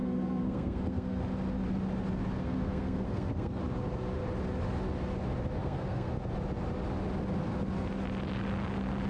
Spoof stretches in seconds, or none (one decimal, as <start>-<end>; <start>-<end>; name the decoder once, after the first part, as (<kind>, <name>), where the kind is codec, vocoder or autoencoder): 0.0-1.2 (codec, SNAC); 2.4-3.6; 5.6-6.1